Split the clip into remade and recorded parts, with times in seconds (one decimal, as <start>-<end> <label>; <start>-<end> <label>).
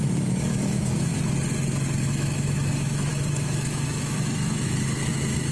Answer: 0.0-1.1 remade; 1.1-2.0 recorded; 2.0-5.5 remade